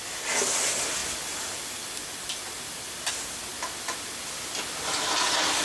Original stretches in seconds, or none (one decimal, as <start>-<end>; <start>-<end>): 0.0-5.6